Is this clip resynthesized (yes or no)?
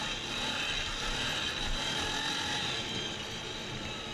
no